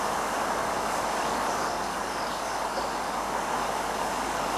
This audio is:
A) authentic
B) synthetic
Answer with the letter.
B